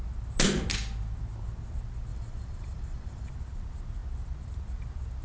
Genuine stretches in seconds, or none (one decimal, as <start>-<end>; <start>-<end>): 0.0-2.1; 3.3-5.2